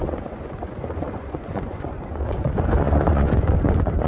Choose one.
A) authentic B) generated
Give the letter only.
B